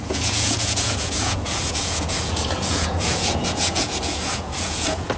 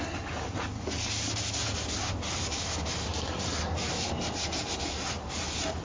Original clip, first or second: second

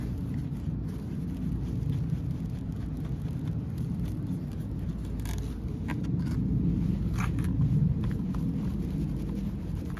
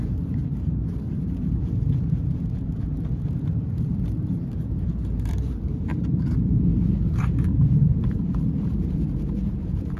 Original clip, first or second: first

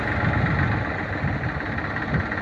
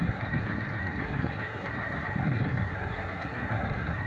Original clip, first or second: first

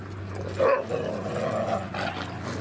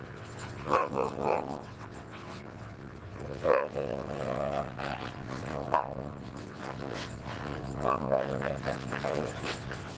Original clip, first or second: first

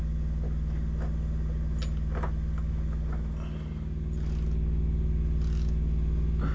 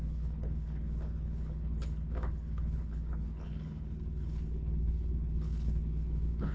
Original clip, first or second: first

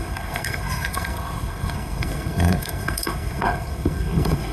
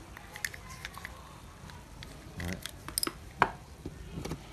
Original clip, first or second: second